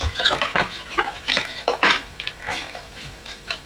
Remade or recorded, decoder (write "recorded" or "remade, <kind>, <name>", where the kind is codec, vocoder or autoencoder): remade, autoencoder, DAC-VAE